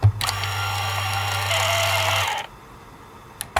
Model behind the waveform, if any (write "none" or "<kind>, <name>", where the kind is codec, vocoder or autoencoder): none